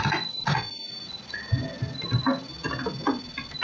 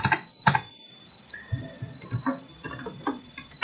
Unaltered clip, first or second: first